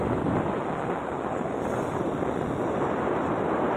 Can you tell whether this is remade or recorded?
recorded